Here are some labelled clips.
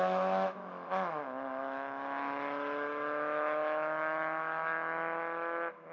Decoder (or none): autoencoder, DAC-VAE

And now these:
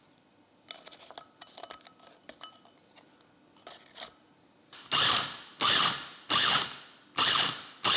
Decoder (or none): none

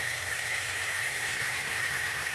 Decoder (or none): codec, SNAC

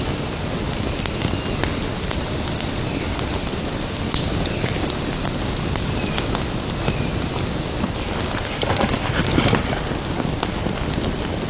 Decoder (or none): none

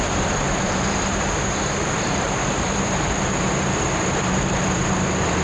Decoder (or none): vocoder, BigVGAN v2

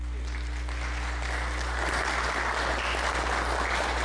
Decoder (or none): none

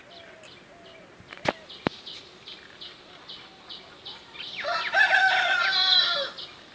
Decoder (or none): none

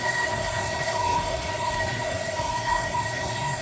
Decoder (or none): codec, SNAC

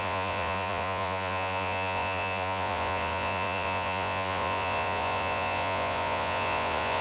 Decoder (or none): vocoder, Vocos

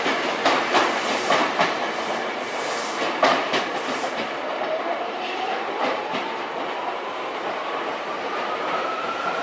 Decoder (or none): vocoder, BigVGAN v2